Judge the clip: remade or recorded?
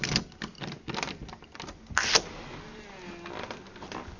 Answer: recorded